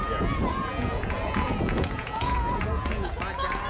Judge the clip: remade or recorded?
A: remade